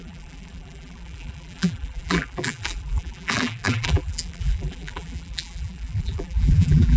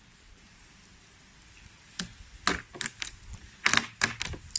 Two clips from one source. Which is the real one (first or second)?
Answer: second